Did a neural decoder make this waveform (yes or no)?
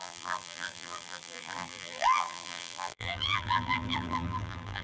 yes